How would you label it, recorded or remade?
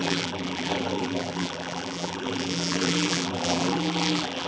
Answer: remade